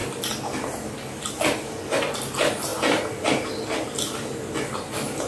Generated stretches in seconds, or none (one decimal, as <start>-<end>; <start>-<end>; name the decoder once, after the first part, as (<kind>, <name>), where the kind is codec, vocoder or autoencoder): none